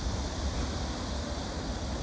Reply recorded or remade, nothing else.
recorded